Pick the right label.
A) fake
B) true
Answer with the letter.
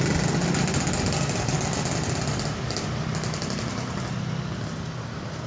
B